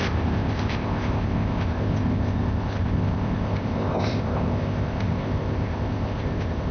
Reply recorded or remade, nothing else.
remade